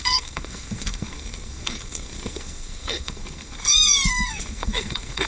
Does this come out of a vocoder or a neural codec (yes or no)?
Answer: yes